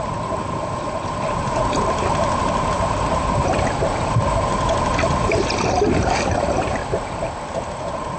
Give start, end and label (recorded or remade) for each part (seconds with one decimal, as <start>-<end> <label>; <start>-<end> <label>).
0.0-8.2 remade